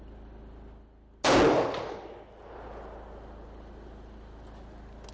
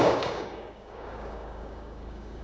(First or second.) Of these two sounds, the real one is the first